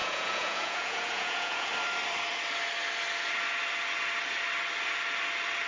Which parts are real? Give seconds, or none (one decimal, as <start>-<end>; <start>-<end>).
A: 1.7-5.7